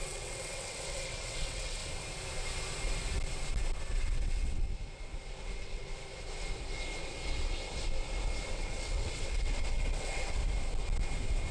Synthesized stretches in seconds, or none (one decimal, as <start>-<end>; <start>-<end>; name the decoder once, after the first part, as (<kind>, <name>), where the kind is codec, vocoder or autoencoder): 0.0-1.8 (vocoder, WaveNeXt); 3.9-4.6; 5.3-5.9; 8.5-10.4